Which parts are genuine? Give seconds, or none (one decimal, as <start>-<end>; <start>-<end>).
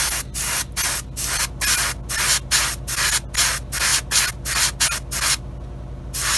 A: 0.0-6.4